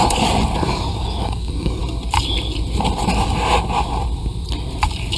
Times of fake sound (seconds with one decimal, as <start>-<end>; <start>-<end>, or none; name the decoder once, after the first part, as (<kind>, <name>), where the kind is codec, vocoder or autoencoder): 0.9-1.8 (codec, DAC)